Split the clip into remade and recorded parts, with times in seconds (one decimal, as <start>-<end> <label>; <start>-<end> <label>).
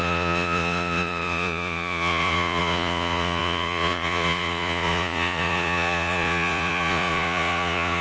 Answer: 0.0-8.0 remade